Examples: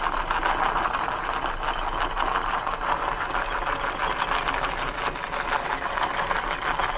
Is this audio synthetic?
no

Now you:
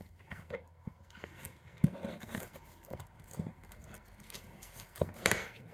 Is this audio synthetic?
yes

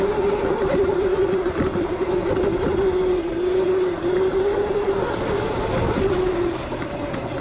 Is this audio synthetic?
no